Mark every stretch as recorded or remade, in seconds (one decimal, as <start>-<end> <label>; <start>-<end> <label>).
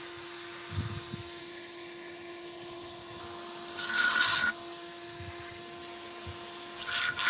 0.0-1.4 recorded; 1.4-3.2 remade; 3.2-7.3 recorded